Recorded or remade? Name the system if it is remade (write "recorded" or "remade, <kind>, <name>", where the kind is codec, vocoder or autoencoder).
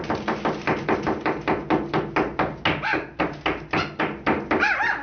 recorded